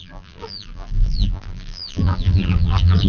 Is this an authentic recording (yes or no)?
no